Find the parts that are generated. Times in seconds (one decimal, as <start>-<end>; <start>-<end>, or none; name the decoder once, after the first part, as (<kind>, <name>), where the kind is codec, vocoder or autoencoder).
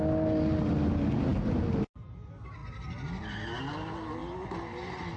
none